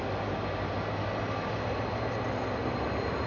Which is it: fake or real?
real